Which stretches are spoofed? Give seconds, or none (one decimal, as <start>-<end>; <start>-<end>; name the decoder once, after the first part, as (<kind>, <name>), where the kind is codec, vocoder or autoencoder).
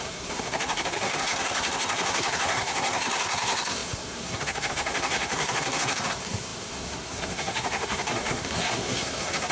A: 0.0-9.5 (codec, SNAC)